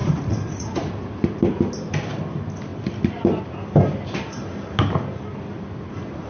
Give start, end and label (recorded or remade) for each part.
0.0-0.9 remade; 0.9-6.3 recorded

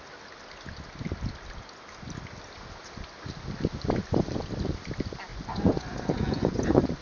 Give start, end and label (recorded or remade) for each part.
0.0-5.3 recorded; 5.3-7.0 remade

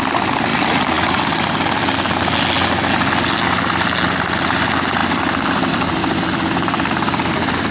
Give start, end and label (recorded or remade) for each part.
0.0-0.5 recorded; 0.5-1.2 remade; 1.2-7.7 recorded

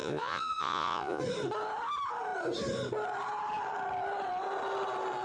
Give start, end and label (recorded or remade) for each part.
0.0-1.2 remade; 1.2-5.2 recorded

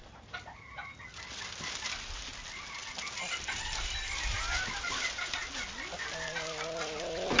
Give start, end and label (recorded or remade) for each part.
0.0-7.4 recorded